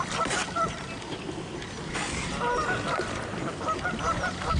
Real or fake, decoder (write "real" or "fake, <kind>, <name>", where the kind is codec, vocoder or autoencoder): real